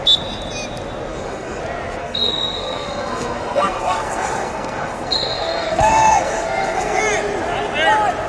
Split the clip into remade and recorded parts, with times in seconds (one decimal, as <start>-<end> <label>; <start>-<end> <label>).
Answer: 0.0-1.1 recorded; 1.1-1.6 remade; 1.6-2.0 recorded; 2.0-7.0 remade; 7.0-8.3 recorded